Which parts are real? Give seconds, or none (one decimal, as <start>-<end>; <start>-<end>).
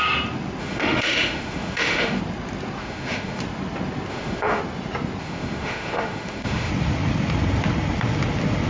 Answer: 0.0-0.6; 2.2-2.8; 3.4-4.1; 4.6-5.2; 6.7-8.7